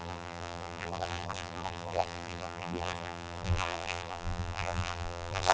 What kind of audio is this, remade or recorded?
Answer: remade